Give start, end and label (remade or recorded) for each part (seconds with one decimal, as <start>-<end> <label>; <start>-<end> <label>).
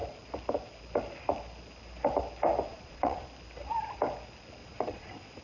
0.0-2.7 recorded; 2.7-3.3 remade; 3.3-4.6 recorded; 4.6-5.4 remade